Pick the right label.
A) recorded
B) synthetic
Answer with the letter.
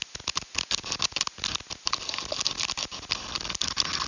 A